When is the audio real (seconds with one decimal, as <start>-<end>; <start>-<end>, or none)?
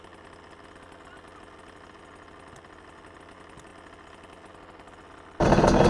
0.0-5.9